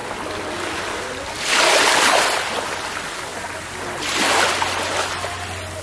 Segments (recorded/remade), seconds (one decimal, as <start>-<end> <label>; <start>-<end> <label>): 0.0-5.8 recorded